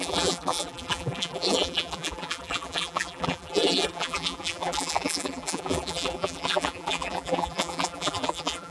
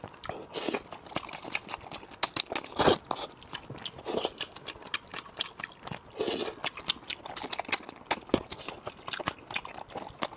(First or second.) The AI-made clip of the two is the first